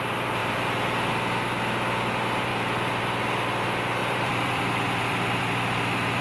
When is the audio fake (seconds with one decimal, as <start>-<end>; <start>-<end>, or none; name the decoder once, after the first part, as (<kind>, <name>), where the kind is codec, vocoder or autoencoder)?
4.0-5.4 (vocoder, BigVGAN v2)